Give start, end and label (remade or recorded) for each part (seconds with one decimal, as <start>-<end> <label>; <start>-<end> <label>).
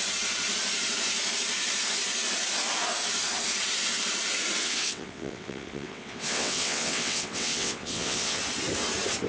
0.0-4.6 recorded; 4.6-8.4 remade; 8.4-9.3 recorded